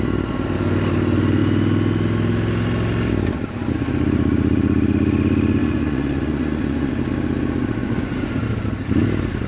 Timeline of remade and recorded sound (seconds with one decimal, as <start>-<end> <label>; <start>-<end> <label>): 0.0-5.6 recorded; 5.6-6.9 remade; 6.9-7.8 recorded; 7.8-8.3 remade; 8.3-9.5 recorded

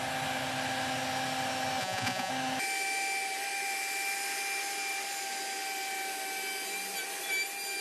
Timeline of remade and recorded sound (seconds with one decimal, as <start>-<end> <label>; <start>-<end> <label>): 0.0-1.8 recorded; 1.8-2.3 remade; 2.3-7.8 recorded

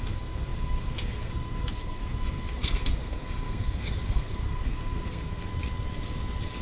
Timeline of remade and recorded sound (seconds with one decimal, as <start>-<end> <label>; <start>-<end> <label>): 0.0-5.5 remade; 5.5-6.6 recorded

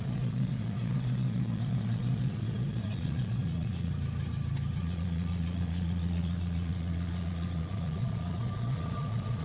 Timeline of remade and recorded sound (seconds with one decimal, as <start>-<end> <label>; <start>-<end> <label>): 0.0-3.9 remade; 3.9-4.8 recorded; 4.8-9.4 remade

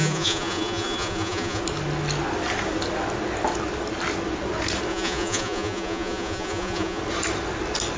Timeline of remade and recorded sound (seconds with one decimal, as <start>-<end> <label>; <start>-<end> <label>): 0.0-1.6 remade; 1.6-4.9 recorded; 4.9-7.0 remade; 7.0-8.0 recorded

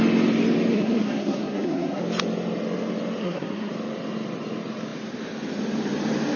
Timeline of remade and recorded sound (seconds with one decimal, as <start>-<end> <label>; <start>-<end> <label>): 0.0-0.7 recorded; 0.7-2.0 remade; 2.0-3.2 recorded; 3.2-3.7 remade; 3.7-6.4 recorded

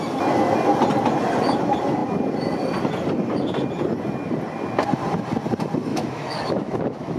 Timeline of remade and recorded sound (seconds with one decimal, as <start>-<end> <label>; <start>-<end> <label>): 0.0-5.9 recorded; 5.9-7.2 remade

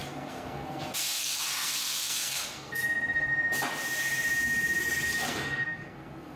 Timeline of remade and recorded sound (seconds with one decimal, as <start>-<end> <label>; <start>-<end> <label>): 0.0-3.3 remade; 3.3-4.8 recorded; 4.8-6.4 remade